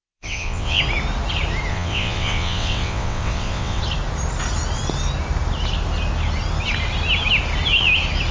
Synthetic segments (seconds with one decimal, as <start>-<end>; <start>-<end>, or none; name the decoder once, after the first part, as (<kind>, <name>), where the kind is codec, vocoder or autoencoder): 0.0-0.8 (vocoder, WaveNeXt); 1.7-3.8